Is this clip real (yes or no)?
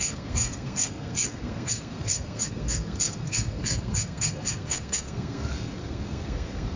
no